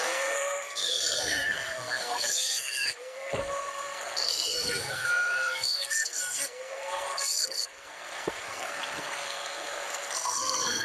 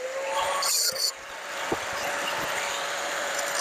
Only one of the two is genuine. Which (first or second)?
second